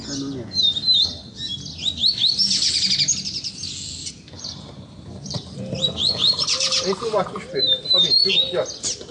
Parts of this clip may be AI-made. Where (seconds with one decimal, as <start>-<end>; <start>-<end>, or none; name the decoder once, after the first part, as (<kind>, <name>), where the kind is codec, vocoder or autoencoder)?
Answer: 4.0-8.4 (vocoder, BigVGAN v2)